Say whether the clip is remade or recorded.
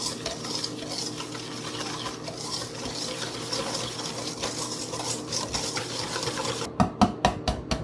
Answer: recorded